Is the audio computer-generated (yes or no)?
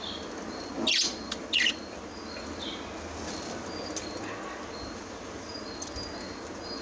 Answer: no